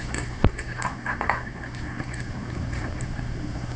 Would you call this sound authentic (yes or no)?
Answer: no